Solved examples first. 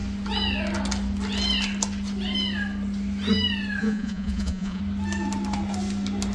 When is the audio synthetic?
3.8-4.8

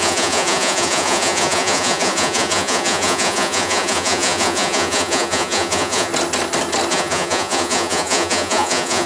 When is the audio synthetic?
0.0-6.1; 6.9-9.1

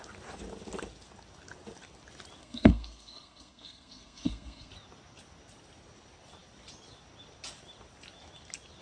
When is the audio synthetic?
2.4-4.7

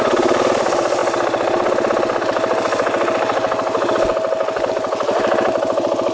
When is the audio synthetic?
none

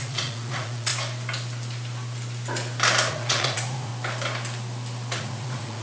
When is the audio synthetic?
0.0-0.9; 3.1-3.9; 5.2-5.8

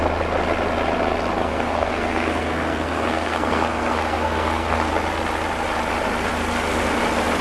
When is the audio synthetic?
1.4-4.9